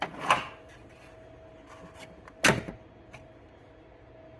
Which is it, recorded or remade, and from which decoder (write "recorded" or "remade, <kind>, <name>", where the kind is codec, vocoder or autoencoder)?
recorded